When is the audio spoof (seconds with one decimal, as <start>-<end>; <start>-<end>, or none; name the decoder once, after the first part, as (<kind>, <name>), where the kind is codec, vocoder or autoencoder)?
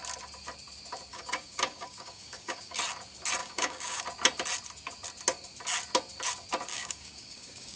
1.1-2.8 (codec, DAC); 3.4-4.0; 6.7-7.8